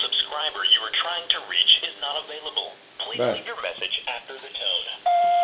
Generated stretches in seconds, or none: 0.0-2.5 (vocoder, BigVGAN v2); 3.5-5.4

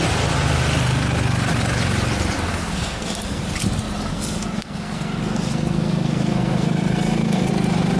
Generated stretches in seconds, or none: 2.5-3.4 (codec, SNAC); 4.1-7.5